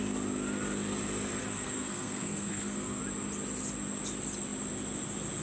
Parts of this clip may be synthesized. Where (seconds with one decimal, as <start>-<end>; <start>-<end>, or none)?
1.4-3.0

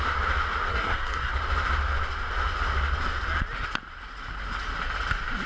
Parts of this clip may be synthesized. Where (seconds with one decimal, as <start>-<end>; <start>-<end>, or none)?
0.7-1.3

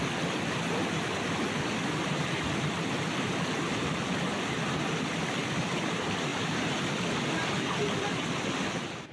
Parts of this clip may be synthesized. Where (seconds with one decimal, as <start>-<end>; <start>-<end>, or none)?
none

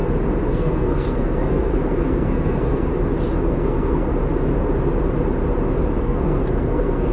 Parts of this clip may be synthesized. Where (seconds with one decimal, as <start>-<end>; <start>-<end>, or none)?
0.5-2.9; 3.5-4.1; 6.0-7.1

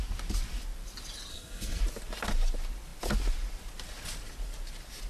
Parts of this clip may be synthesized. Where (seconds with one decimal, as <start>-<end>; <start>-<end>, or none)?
1.3-1.8

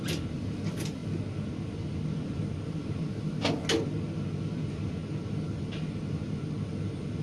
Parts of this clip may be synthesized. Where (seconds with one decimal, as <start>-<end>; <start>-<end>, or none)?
none

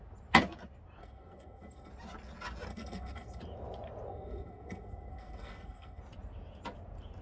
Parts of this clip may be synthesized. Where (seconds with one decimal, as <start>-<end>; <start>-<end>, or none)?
1.0-1.9; 2.7-3.4; 4.1-6.0

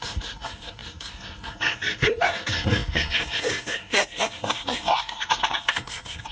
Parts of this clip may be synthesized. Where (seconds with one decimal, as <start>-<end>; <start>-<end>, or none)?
0.0-6.3